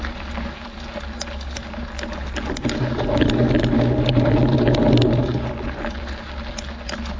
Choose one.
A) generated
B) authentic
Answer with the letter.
B